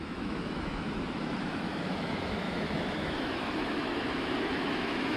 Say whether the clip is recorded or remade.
remade